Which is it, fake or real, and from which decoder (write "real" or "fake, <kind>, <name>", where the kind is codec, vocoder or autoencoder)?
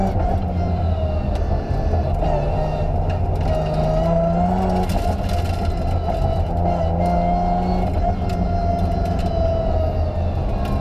real